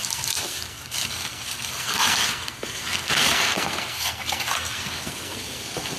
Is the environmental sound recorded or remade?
remade